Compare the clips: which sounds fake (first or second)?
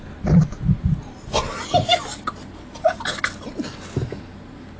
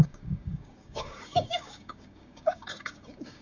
second